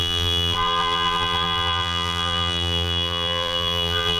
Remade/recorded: remade